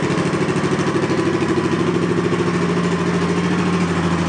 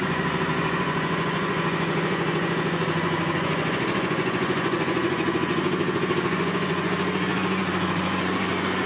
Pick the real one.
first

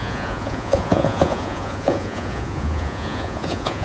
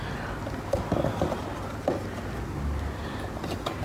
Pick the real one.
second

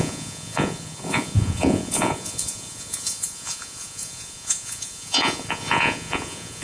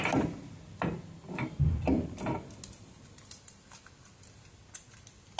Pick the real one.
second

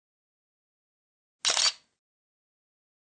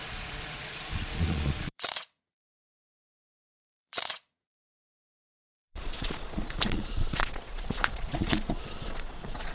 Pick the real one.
first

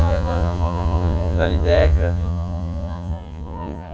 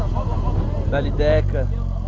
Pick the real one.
second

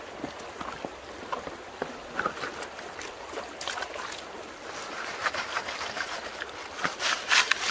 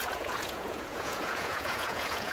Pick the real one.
first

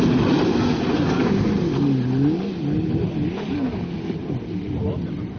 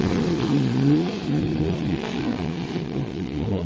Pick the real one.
first